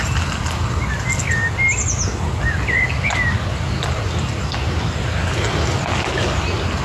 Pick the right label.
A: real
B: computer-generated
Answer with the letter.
A